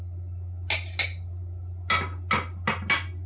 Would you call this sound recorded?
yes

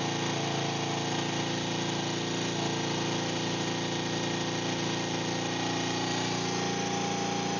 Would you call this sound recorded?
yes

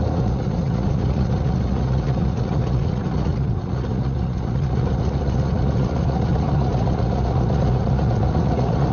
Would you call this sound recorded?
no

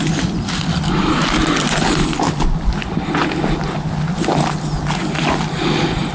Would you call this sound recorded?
yes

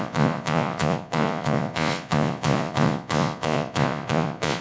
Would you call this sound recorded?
no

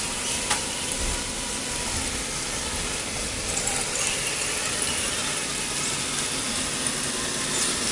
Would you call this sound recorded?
yes